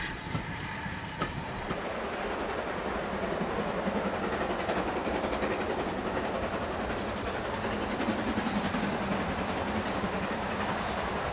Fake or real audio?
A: fake